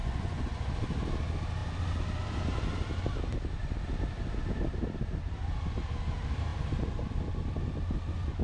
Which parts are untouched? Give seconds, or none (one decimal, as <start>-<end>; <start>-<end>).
0.7-8.4